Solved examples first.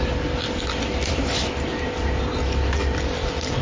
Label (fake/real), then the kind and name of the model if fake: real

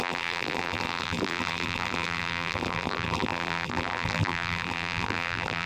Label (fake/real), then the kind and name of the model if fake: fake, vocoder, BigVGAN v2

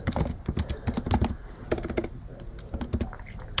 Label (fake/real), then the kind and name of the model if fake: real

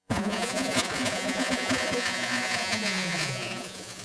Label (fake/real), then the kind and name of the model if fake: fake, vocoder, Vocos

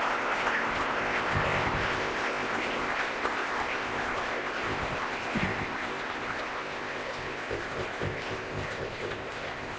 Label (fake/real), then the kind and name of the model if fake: fake, codec, ZipCodec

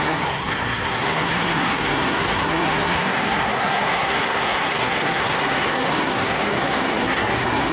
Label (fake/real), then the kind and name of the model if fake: fake, codec, SNAC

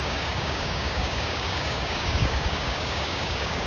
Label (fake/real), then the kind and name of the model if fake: fake, codec, DAC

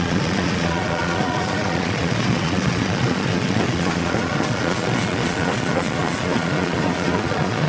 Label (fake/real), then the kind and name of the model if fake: fake, vocoder, Vocos